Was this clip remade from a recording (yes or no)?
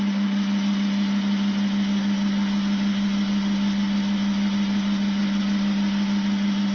no